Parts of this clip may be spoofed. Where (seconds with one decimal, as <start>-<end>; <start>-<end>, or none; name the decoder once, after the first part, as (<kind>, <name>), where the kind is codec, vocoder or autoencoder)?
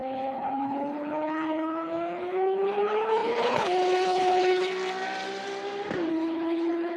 0.0-4.7 (codec, HILCodec); 6.1-7.0